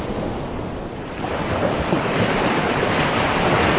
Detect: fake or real real